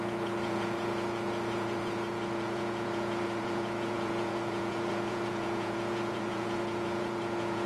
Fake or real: fake